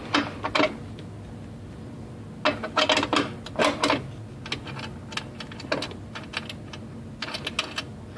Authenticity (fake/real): real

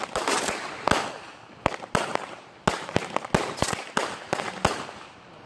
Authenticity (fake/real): real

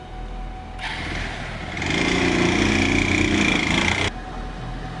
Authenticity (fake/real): real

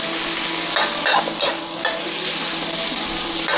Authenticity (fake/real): real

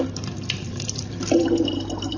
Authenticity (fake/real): fake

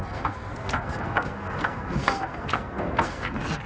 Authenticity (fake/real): fake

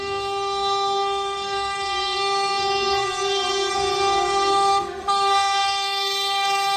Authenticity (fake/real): fake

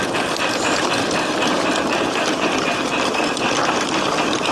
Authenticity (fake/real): fake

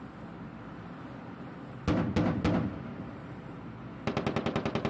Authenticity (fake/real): real